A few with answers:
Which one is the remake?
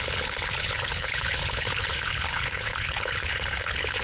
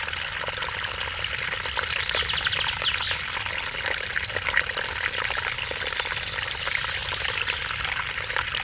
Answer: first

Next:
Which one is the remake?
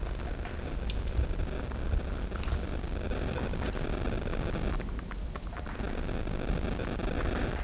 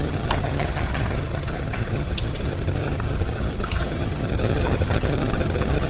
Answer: second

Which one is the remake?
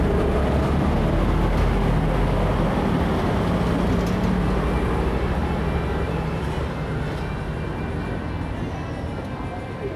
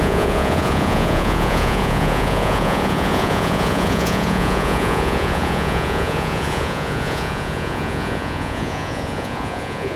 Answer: second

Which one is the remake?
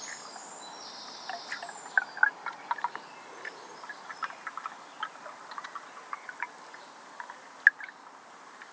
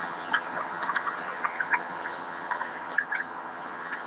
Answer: second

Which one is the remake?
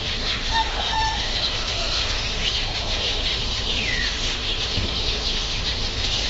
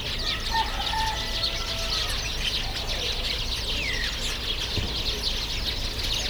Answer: first